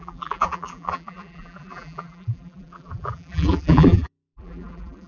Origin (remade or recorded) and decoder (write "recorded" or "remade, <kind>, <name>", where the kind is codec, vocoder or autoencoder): remade, vocoder, BigVGAN v2